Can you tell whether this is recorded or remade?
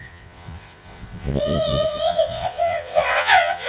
remade